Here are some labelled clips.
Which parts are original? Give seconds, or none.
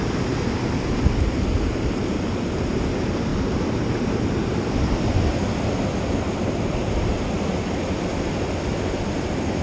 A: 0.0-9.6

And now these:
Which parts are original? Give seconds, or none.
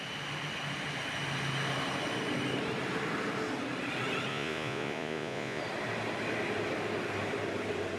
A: 0.0-4.3; 5.6-8.0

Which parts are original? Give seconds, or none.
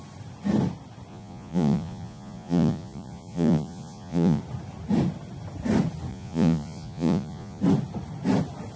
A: 0.0-1.1; 4.4-6.1; 7.6-8.8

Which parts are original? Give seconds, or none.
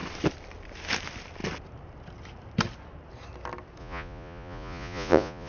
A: 0.0-3.8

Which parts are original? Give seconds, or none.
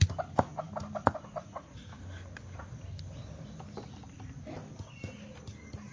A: 0.0-1.4; 1.9-5.9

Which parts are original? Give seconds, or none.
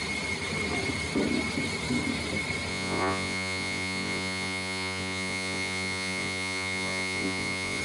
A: 0.0-2.7